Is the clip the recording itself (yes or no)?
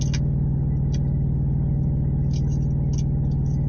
yes